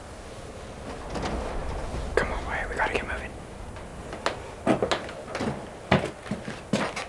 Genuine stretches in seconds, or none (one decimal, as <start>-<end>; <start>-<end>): 0.0-7.1